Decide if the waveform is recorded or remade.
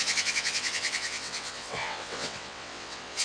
remade